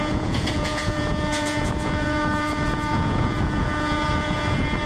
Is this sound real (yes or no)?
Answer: no